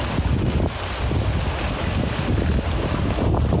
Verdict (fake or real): real